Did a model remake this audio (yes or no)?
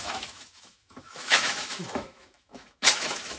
yes